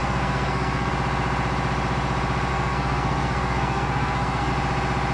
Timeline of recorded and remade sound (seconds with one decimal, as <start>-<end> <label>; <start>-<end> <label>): 0.0-0.9 remade; 0.9-2.5 recorded; 2.5-4.5 remade; 4.5-5.1 recorded